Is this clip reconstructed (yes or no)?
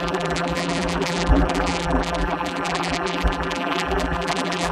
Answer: yes